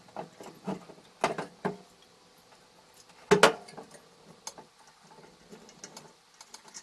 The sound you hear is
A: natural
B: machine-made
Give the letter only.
A